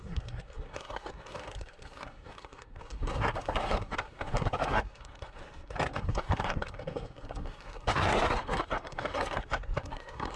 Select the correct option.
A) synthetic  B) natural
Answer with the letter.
A